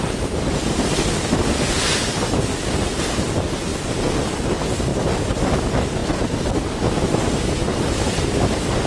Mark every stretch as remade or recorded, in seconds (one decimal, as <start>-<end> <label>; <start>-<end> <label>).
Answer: 0.0-4.9 recorded; 4.9-5.5 remade; 5.5-8.9 recorded

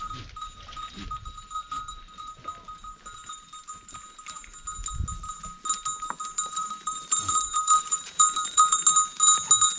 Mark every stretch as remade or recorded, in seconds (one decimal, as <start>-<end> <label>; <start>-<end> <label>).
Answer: 0.0-6.3 recorded; 6.3-8.8 remade; 8.8-9.8 recorded

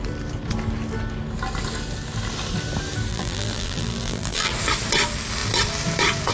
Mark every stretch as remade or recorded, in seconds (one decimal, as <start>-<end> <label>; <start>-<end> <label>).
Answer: 0.0-3.1 recorded; 3.1-4.5 remade; 4.5-6.3 recorded